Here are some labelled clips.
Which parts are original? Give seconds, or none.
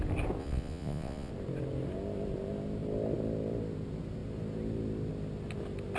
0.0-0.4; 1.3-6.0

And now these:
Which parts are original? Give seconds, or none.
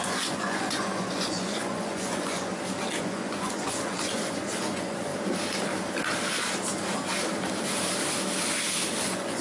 2.5-3.0; 5.1-9.0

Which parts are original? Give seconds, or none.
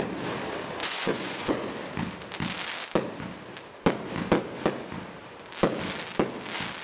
0.0-0.8; 1.7-6.8